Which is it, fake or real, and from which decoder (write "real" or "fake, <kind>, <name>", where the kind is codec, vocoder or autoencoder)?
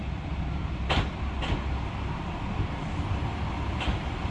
real